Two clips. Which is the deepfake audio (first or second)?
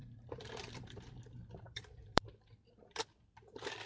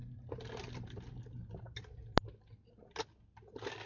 first